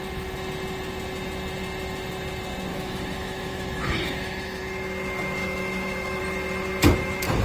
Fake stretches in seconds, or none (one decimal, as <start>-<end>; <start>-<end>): 2.7-4.6; 5.4-6.2